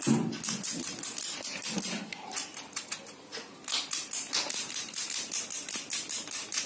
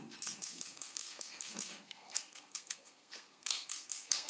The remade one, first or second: second